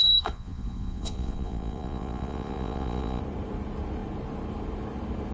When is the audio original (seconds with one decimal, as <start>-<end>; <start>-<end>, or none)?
3.2-5.3